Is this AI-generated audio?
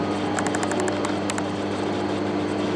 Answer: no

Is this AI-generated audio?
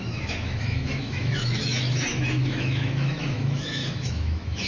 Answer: yes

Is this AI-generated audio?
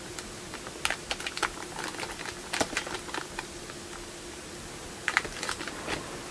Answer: no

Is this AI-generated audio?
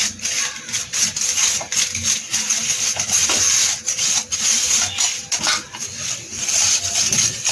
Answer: no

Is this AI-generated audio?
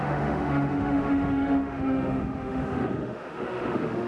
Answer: yes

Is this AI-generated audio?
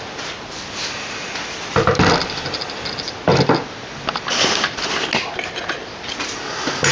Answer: no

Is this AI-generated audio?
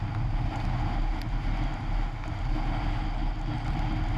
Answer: no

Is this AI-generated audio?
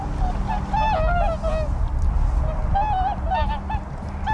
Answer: no